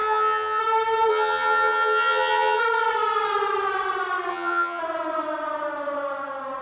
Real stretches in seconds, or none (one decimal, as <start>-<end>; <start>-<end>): 0.6-1.1; 2.6-4.3; 4.8-6.6